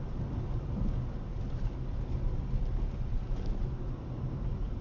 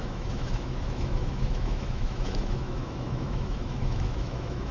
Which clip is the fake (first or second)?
second